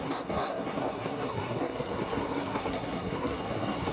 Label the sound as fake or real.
fake